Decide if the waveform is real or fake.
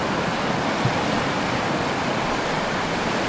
real